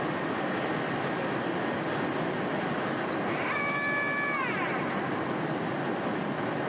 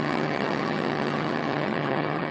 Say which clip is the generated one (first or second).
second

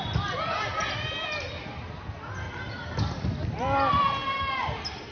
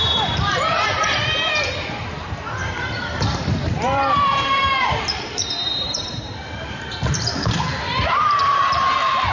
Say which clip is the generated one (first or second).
second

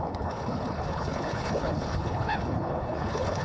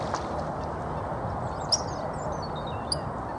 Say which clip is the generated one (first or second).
first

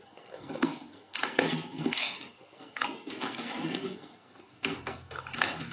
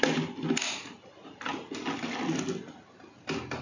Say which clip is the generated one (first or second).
first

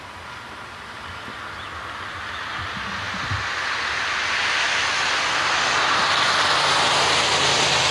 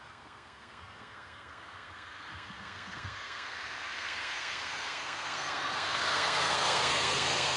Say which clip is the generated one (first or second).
second